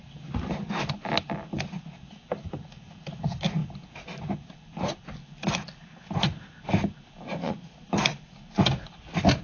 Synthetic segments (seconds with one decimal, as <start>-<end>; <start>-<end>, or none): 7.4-7.9

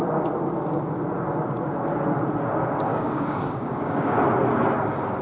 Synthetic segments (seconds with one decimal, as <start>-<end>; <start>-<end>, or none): 2.9-4.2

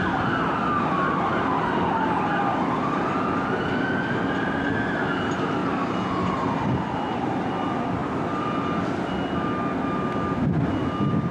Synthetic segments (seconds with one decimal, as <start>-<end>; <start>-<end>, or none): none

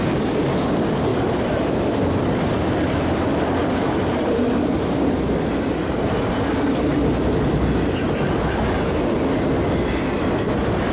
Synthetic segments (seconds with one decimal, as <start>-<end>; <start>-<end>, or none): 1.1-1.9; 3.6-5.1

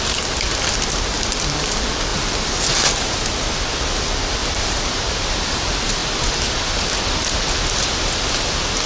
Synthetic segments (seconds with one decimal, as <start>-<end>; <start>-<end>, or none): 2.1-3.2; 4.4-5.1

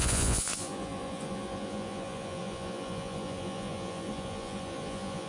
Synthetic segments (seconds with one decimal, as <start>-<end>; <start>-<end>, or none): 0.0-5.3

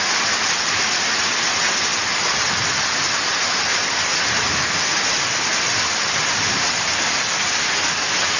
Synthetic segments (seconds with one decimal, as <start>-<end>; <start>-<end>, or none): none

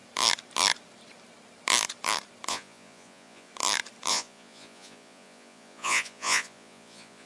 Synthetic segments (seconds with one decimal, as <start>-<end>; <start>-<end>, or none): 2.5-3.5; 4.1-7.3